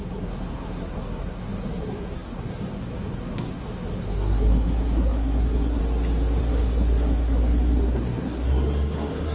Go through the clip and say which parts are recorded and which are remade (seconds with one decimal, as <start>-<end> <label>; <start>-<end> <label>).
0.0-5.8 remade; 5.8-6.4 recorded; 6.4-9.3 remade

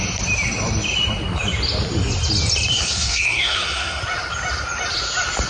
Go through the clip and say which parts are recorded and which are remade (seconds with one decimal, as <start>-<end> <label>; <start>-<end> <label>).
0.0-2.7 recorded; 2.7-4.0 remade; 4.0-5.5 recorded

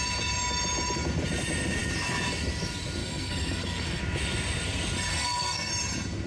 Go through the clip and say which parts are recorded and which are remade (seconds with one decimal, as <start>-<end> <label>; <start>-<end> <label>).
0.0-3.0 recorded; 3.0-4.0 remade; 4.0-5.1 recorded; 5.1-5.7 remade; 5.7-6.3 recorded

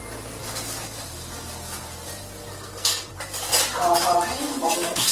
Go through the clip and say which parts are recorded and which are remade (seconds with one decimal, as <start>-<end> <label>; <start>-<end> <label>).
0.0-2.5 recorded; 2.5-3.1 remade; 3.1-4.5 recorded; 4.5-5.1 remade

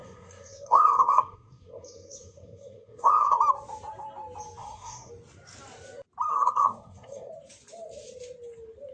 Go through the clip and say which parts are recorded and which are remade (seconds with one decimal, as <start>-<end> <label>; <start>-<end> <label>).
0.0-3.4 remade; 3.4-4.6 recorded; 4.6-5.1 remade; 5.1-6.3 recorded; 6.3-7.3 remade; 7.3-8.9 recorded